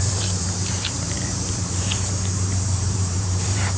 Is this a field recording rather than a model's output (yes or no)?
no